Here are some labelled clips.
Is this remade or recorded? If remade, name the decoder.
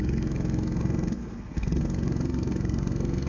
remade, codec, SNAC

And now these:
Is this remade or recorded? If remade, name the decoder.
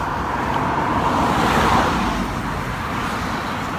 recorded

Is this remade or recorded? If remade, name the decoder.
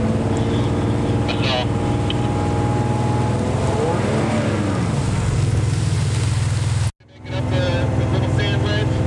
recorded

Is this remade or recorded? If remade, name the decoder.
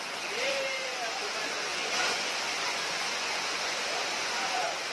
remade, vocoder, Vocos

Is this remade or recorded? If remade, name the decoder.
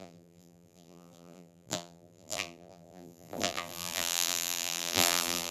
remade, vocoder, BigVGAN v2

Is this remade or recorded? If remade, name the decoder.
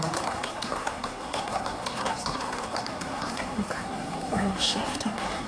remade, codec, SNAC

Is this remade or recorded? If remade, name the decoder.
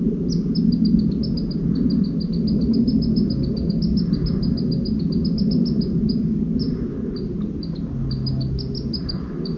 recorded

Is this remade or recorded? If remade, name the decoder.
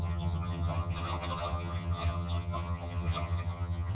remade, vocoder, HiFi-GAN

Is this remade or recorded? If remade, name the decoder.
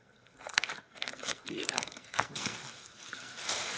remade, codec, SNAC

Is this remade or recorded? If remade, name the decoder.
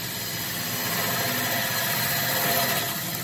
recorded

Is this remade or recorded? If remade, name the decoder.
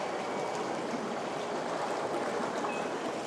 recorded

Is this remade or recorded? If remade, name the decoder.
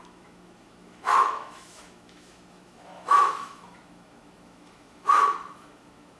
remade, autoencoder, DAC-VAE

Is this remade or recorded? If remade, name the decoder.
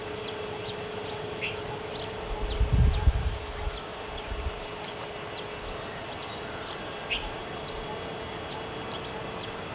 recorded